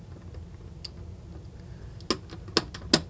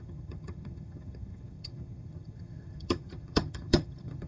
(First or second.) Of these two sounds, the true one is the first